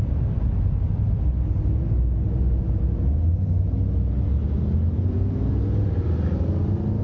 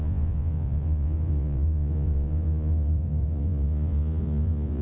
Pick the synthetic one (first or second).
second